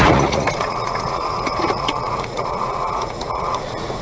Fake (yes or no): yes